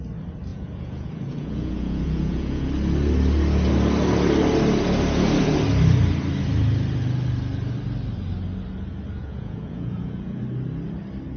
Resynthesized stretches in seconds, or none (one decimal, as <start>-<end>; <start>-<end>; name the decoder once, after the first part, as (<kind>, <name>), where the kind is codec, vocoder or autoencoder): 0.5-2.7 (vocoder, Vocos); 9.2-10.4

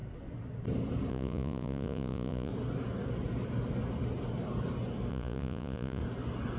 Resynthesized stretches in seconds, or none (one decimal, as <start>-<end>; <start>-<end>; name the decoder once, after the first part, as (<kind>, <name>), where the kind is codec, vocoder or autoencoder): 1.1-2.5 (vocoder, Vocos); 5.1-6.0

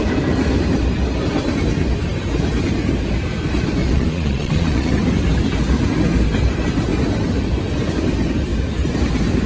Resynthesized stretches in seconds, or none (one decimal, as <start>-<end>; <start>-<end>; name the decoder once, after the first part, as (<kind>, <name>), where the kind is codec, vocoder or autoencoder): 3.8-4.9 (vocoder, Vocos)

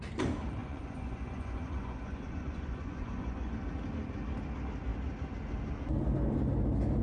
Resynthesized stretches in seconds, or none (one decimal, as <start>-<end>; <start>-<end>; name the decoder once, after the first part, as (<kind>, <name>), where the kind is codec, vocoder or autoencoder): 0.6-3.5 (vocoder, Vocos)

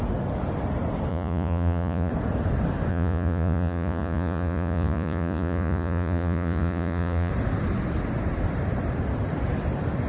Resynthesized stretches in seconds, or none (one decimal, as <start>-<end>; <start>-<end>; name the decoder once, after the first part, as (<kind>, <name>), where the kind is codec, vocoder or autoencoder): 1.1-2.1 (vocoder, Vocos); 2.9-7.3

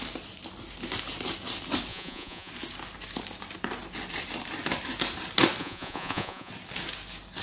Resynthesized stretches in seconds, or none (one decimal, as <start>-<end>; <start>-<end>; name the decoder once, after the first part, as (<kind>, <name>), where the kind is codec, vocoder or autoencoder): 1.9-2.5 (vocoder, Vocos); 5.6-6.5

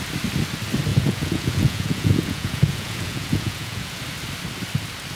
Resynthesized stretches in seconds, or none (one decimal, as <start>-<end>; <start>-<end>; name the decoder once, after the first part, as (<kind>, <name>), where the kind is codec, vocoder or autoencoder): 0.9-4.0 (vocoder, Vocos)